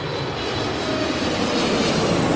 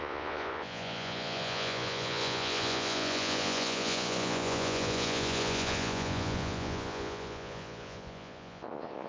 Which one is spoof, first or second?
second